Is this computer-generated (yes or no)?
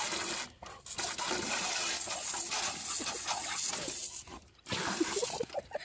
no